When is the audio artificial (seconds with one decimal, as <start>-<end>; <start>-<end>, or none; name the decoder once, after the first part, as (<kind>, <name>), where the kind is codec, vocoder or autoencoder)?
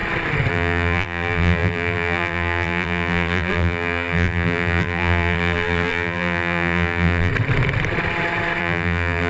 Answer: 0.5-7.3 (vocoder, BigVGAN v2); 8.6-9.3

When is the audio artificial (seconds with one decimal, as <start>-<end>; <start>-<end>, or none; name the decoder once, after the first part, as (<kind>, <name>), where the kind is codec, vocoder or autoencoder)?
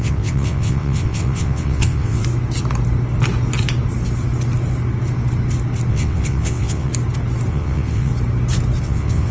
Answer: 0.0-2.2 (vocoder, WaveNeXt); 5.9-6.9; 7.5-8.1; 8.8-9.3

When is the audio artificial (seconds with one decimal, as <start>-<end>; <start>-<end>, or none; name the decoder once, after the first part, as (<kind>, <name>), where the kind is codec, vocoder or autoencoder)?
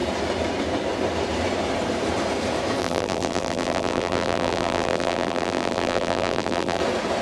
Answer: 2.8-6.8 (vocoder, BigVGAN v2)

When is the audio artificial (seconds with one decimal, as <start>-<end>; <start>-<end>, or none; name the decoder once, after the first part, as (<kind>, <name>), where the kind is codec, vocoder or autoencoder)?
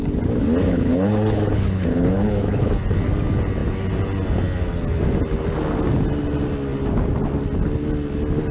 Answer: 0.7-2.7 (codec, HILCodec)